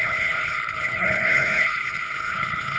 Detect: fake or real fake